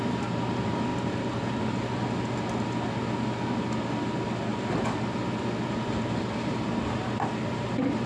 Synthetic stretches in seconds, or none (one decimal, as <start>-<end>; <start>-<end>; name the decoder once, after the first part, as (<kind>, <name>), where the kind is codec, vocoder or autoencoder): none